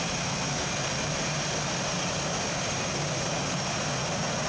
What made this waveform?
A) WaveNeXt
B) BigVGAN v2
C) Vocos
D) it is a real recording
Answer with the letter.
D